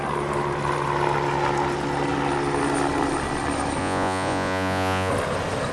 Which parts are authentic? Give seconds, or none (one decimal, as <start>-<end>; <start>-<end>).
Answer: 0.0-3.8; 5.1-5.7